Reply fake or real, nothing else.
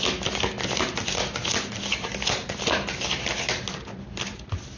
real